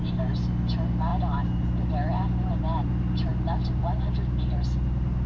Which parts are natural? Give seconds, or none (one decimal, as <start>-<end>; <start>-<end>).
0.0-5.3